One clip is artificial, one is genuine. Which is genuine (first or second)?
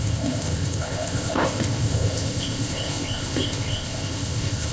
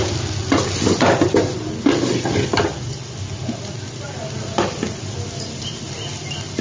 second